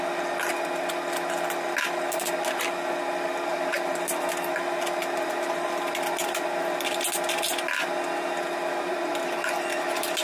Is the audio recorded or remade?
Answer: recorded